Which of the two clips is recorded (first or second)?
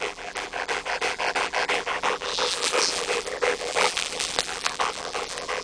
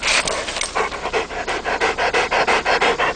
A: second